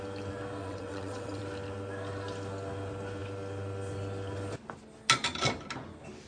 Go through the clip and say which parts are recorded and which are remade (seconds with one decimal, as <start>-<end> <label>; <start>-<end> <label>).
0.0-0.6 recorded; 0.6-1.4 remade; 1.4-6.3 recorded